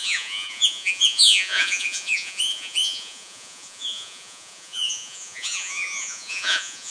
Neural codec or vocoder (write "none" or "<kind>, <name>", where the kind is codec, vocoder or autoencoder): vocoder, Vocos